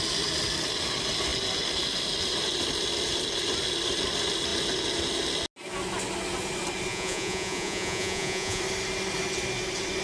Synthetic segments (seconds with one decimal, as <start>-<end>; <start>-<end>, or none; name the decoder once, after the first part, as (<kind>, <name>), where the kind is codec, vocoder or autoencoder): 6.9-8.6 (vocoder, Vocos)